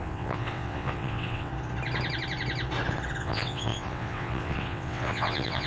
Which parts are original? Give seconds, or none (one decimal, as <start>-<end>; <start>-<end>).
1.5-3.2